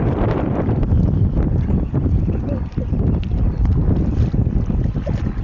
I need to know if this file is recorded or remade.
remade